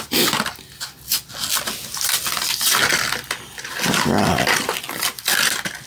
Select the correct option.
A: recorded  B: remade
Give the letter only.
A